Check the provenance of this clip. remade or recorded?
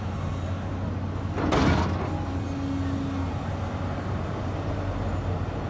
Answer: recorded